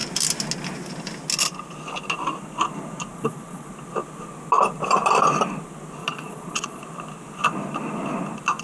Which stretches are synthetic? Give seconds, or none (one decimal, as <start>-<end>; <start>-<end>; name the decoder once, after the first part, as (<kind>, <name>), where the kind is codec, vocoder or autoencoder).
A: 3.1-3.7 (vocoder, Vocos); 6.0-6.8